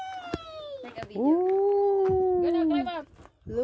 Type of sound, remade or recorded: recorded